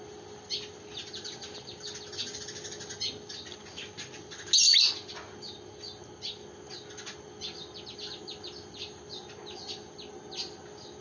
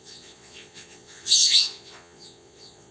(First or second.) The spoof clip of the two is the second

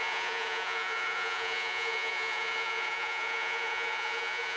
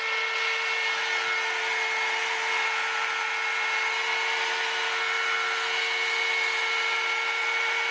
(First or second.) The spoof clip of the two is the first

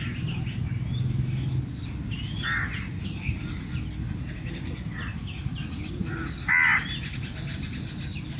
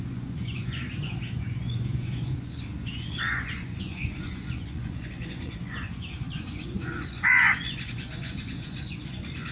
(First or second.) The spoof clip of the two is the second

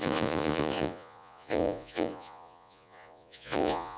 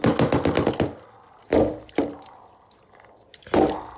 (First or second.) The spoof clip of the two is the first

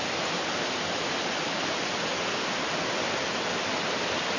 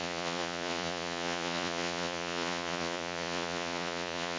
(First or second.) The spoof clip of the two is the second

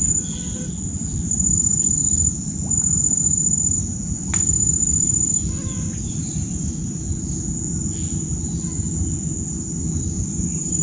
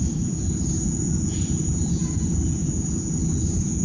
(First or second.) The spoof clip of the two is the second